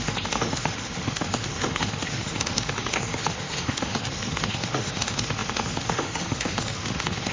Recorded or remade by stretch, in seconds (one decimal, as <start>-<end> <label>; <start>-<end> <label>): 0.0-7.3 remade